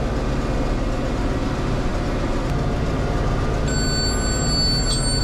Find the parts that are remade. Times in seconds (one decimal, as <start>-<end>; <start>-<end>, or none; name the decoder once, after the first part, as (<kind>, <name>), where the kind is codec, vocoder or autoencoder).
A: none